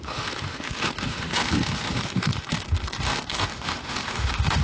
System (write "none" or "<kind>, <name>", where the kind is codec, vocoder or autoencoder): autoencoder, DAC-VAE